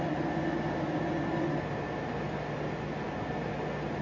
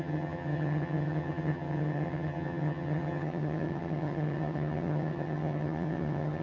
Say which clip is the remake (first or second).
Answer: second